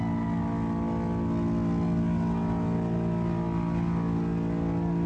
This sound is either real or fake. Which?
real